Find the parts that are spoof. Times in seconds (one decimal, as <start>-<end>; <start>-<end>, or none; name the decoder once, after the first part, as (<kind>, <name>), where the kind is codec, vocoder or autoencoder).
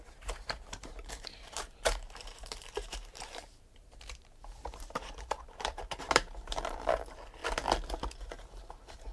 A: 0.0-7.4 (vocoder, BigVGAN v2); 8.2-9.1